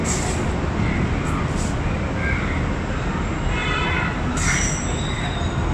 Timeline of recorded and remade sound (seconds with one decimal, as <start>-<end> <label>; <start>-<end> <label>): 0.0-3.6 recorded; 3.6-5.7 remade